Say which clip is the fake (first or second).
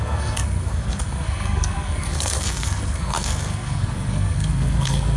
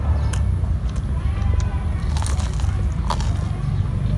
first